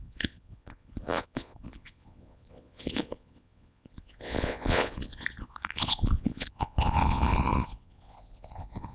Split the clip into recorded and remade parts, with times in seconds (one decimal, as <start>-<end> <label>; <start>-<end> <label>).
0.0-8.9 remade